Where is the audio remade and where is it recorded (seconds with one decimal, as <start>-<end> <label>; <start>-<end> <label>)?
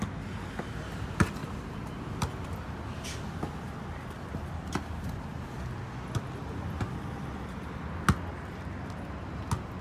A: 0.0-1.4 recorded; 1.4-5.8 remade; 5.8-9.8 recorded